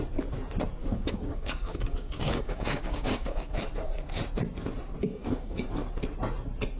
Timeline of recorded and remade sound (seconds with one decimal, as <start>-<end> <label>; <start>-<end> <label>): 0.0-0.8 recorded; 0.8-3.5 remade; 3.5-5.1 recorded; 5.1-5.7 remade; 5.7-6.8 recorded